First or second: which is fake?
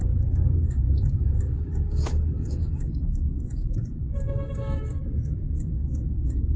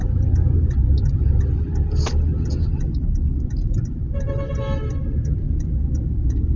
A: first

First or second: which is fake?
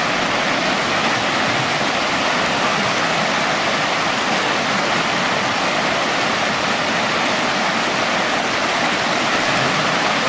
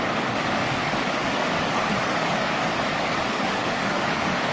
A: second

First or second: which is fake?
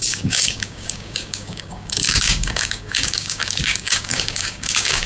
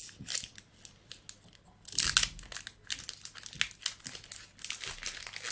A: first